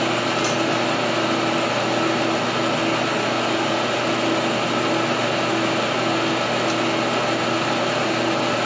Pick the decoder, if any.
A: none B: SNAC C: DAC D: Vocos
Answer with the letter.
A